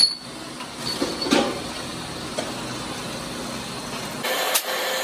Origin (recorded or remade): recorded